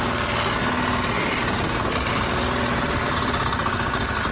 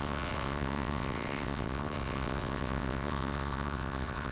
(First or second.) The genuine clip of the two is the first